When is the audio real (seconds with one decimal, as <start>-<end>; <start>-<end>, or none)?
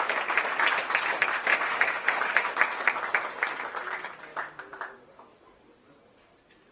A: 0.0-1.5; 2.5-6.7